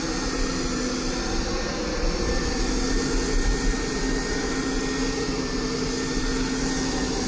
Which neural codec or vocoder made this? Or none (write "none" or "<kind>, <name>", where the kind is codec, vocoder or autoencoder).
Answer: none